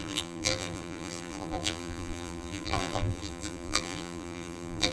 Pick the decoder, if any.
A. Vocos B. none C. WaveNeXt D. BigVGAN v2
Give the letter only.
D